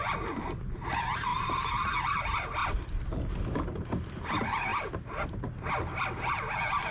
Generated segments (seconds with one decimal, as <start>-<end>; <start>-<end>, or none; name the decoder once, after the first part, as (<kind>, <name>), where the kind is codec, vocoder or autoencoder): none